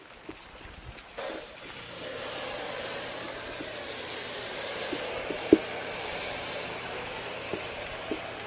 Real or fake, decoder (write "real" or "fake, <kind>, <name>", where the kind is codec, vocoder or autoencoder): real